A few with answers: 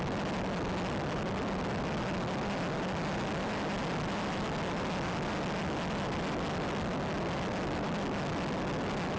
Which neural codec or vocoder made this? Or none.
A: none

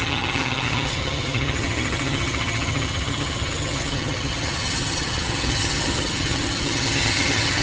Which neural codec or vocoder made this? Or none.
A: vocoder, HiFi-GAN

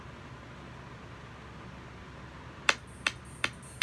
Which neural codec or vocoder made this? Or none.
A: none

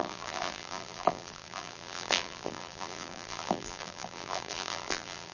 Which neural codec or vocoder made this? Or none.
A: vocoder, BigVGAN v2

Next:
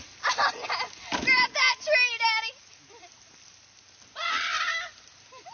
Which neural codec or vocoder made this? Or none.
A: none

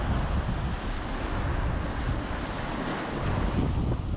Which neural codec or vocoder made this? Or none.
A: none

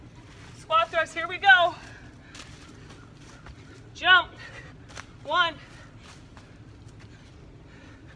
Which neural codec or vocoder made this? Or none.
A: none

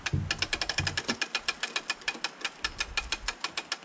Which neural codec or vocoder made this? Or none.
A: none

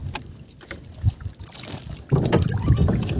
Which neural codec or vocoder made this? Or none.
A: none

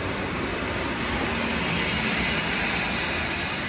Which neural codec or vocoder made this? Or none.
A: none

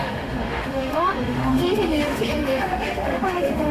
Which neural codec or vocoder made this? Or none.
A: autoencoder, DAC-VAE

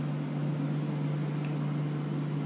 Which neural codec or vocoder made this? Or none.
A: none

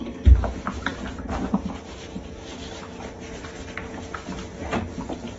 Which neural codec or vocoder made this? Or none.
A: none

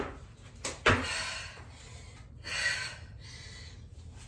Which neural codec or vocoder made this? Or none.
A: none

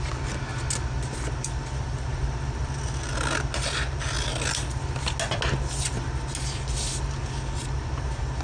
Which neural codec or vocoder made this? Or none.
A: none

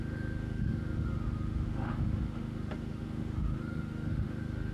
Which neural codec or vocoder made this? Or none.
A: autoencoder, DAC-VAE